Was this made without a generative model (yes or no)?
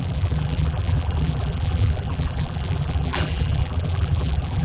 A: no